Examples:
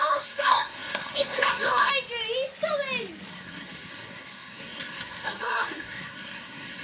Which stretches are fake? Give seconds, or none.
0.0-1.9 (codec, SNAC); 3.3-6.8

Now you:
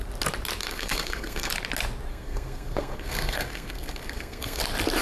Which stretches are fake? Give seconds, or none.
0.6-1.5 (codec, SNAC); 2.1-4.6